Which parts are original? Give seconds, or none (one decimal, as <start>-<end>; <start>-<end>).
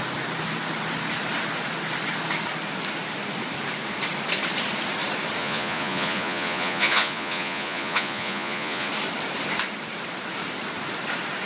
0.0-5.4; 8.9-11.5